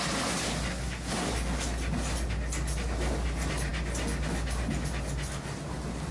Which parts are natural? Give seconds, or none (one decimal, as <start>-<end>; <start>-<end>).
0.0-0.7; 1.3-6.1